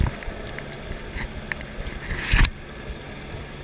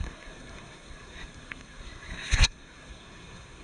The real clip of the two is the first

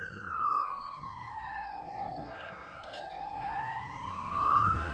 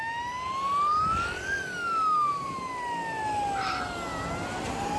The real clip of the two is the second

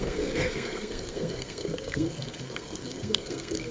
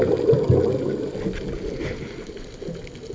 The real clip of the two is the second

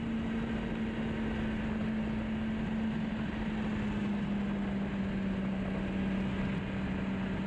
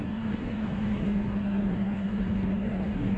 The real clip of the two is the first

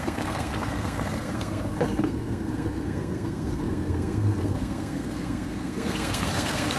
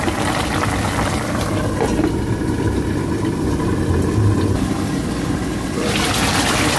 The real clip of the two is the second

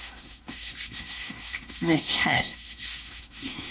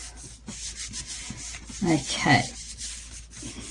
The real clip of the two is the second